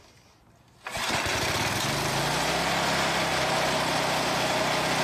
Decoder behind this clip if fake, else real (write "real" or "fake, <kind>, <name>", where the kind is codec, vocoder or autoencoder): real